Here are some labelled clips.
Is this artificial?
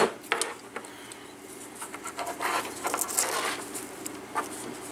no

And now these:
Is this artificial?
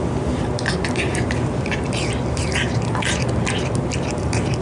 yes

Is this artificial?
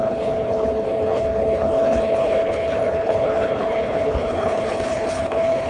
yes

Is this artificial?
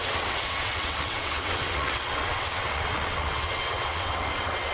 yes